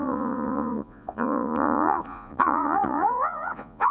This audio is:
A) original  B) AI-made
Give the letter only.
B